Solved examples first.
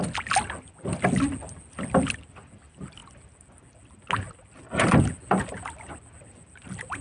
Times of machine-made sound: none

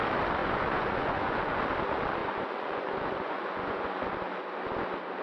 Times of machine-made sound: 0.4-1.6 (vocoder, Vocos); 2.2-4.1

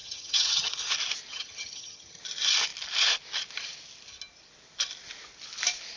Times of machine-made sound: 0.0-0.9 (vocoder, HiFi-GAN); 1.3-2.2

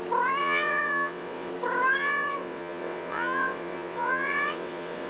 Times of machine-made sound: 0.4-1.5 (vocoder, WaveNeXt); 2.0-5.1

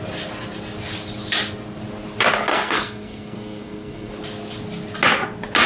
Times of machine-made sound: 2.5-4.1 (codec, SNAC)

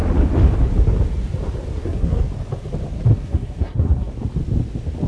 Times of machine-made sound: 1.7-2.2 (codec, SNAC); 3.1-4.1

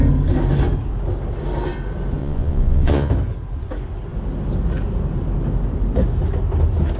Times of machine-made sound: 2.2-3.1 (vocoder, Vocos)

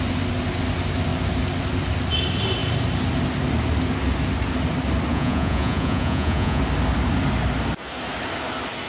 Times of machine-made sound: 5.1-6.6 (vocoder, Vocos)